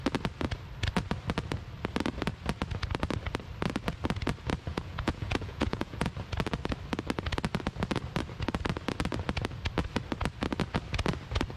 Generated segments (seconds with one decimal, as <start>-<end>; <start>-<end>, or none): 4.7-6.1